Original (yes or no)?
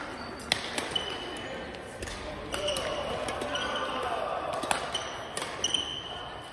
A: yes